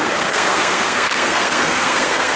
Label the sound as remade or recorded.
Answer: remade